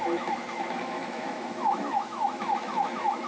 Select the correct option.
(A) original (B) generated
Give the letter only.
B